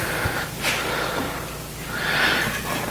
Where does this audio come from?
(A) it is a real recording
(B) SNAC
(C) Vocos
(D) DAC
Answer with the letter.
A